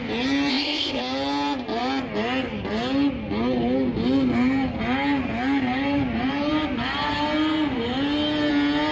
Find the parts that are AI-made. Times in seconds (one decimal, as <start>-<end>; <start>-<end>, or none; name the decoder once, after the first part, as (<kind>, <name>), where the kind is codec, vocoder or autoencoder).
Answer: 0.5-1.0 (codec, ZipCodec)